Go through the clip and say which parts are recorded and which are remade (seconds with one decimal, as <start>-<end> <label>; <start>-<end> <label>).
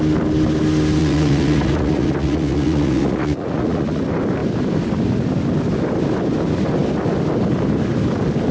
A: 0.0-1.0 recorded; 1.0-4.0 remade; 4.0-8.5 recorded